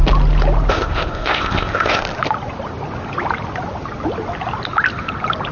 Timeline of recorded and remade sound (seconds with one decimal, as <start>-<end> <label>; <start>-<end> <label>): 0.0-0.7 recorded; 0.7-2.0 remade; 2.0-5.5 recorded